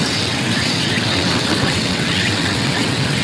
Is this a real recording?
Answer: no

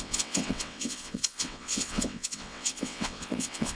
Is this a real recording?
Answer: no